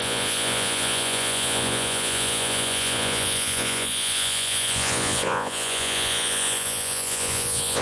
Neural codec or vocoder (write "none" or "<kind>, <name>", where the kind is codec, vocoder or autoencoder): vocoder, Vocos